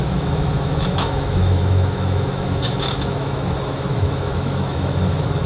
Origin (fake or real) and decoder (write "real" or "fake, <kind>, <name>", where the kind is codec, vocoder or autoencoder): fake, autoencoder, DAC-VAE